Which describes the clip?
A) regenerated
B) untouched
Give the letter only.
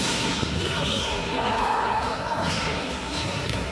A